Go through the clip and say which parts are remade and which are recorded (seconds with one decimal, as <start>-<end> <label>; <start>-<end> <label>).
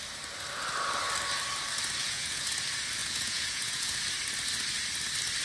0.0-2.0 recorded; 2.0-2.5 remade; 2.5-3.0 recorded; 3.0-4.0 remade; 4.0-5.4 recorded